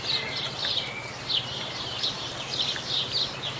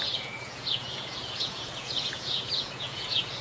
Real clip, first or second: first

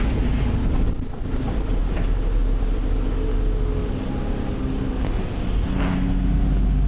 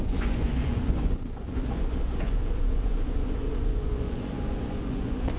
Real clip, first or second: first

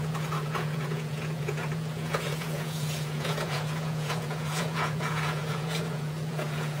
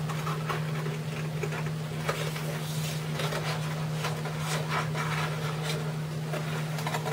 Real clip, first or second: second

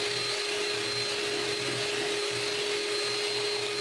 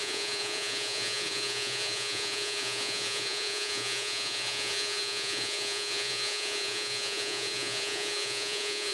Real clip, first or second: first